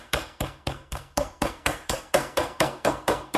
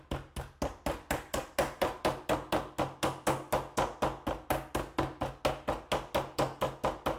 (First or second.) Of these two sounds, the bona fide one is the second